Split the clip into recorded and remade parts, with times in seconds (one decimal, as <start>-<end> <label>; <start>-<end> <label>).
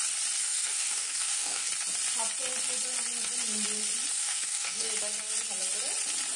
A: 0.0-0.4 recorded; 0.4-1.7 remade; 1.7-4.1 recorded; 4.1-4.9 remade; 4.9-6.4 recorded